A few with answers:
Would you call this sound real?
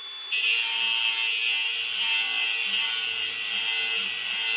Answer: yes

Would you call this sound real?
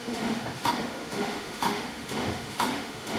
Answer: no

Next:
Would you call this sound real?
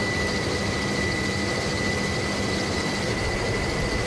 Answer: yes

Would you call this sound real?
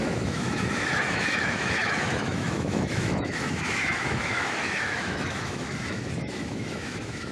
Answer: no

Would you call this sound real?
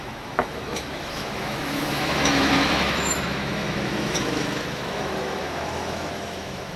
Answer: no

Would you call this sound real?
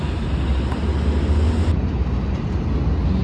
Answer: yes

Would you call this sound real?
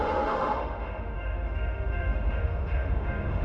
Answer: no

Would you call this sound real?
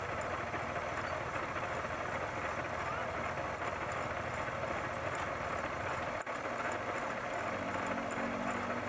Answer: yes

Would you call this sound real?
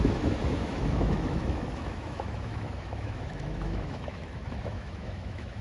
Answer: no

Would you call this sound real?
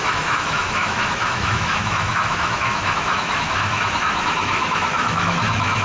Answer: no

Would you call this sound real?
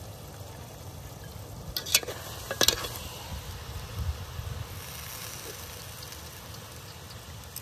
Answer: yes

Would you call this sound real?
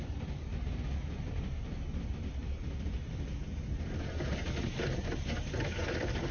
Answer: yes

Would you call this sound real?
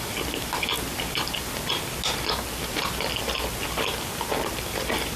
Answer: yes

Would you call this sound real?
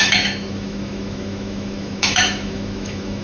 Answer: no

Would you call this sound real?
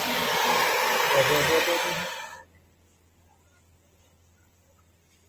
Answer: yes